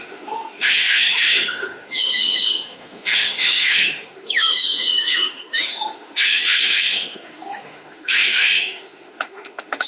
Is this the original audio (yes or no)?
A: no